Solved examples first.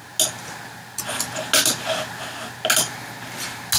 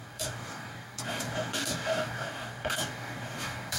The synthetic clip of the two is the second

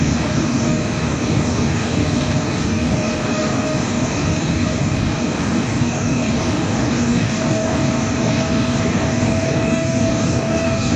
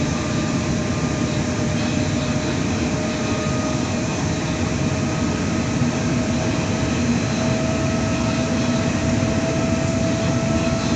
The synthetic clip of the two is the first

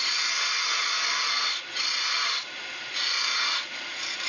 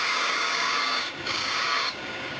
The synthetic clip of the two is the second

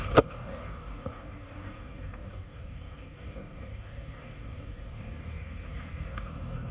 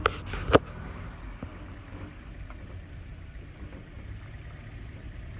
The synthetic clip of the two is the first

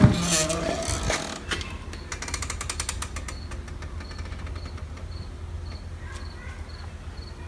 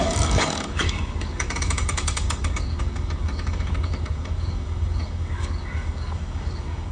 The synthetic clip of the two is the second